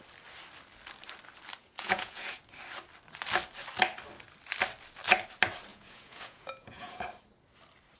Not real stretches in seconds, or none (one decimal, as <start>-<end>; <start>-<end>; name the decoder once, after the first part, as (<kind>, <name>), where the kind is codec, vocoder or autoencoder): 1.6-2.4 (vocoder, Vocos); 5.7-7.0